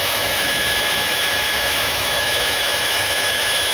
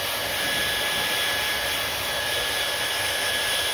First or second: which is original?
second